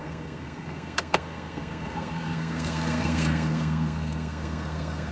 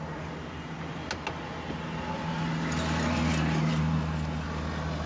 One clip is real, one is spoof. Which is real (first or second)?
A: second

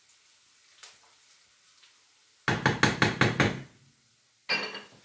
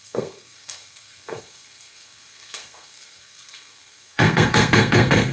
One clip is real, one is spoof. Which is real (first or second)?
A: first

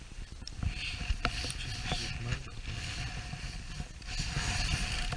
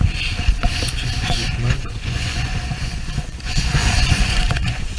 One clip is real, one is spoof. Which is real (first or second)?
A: first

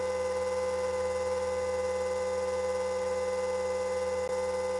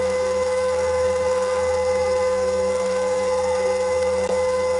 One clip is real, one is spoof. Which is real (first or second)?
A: first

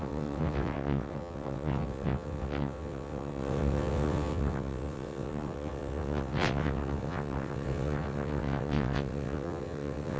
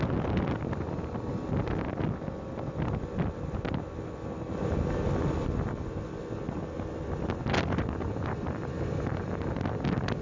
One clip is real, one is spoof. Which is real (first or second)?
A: second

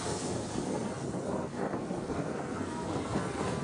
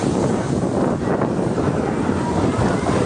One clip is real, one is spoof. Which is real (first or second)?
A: second